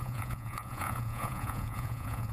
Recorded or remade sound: remade